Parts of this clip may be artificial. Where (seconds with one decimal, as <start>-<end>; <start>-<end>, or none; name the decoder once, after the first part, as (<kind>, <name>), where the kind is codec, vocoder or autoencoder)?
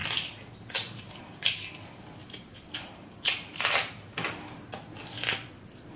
2.2-4.4 (vocoder, BigVGAN v2)